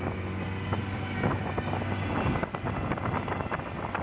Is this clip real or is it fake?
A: real